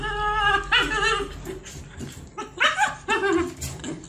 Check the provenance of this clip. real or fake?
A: real